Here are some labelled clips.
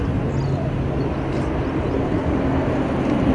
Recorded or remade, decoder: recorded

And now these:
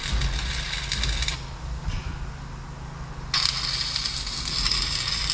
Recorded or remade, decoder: recorded